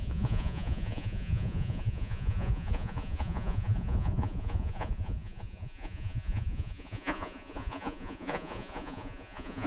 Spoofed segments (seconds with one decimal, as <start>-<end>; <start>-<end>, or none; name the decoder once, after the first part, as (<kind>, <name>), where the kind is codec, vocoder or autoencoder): 0.0-9.7 (vocoder, Vocos)